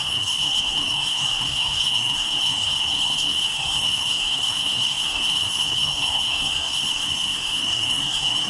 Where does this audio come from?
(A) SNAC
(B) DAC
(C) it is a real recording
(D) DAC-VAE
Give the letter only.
A